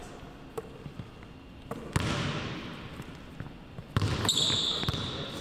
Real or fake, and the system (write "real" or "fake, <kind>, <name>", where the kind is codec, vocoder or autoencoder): real